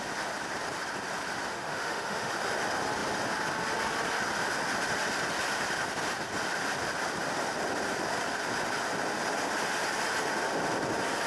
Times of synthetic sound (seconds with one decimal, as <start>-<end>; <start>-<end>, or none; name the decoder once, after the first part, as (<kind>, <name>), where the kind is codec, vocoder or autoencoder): 1.5-2.3 (autoencoder, DAC-VAE)